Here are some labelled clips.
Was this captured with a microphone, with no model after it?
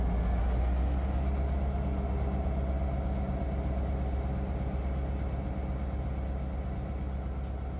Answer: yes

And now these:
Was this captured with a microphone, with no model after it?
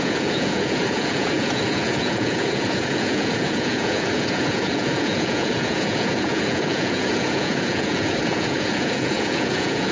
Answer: no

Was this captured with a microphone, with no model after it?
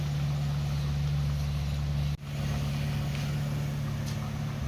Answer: yes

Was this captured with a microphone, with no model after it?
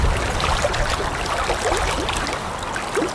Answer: yes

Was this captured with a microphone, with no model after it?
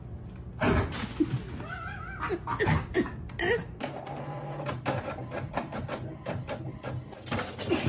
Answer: yes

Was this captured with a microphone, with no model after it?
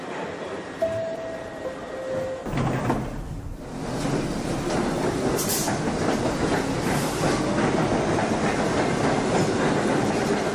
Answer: yes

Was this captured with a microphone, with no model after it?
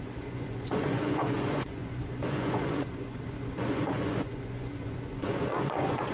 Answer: no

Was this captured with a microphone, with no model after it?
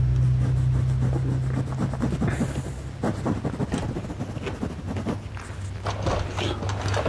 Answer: yes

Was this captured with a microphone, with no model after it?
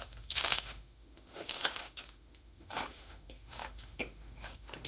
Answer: no